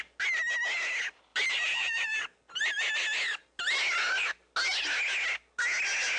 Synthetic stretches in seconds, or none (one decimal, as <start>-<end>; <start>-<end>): 1.3-2.2